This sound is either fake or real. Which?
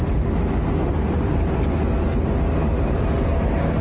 real